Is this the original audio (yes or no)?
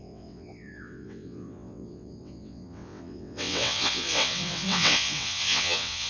no